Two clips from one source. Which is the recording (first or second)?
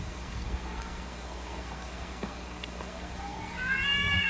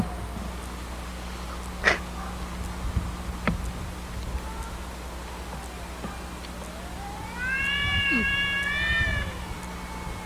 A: second